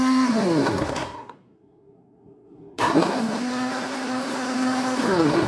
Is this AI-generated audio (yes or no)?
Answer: yes